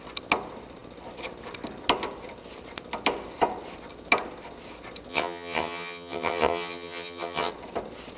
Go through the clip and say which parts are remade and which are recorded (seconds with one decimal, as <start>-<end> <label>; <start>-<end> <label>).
0.0-5.1 recorded; 5.1-7.5 remade; 7.5-8.2 recorded